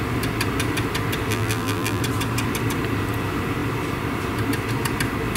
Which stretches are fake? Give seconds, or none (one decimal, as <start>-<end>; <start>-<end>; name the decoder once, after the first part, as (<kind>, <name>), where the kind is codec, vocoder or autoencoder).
1.3-2.0 (vocoder, BigVGAN v2)